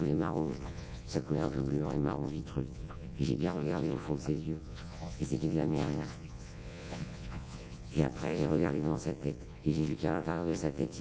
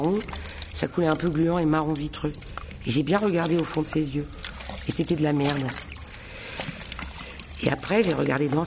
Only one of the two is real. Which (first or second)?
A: second